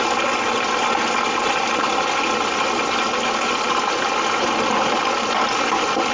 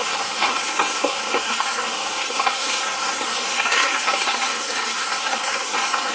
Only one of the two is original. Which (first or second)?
first